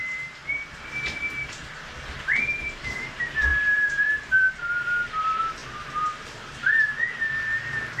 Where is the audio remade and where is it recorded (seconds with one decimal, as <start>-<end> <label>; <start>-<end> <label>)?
0.0-8.0 recorded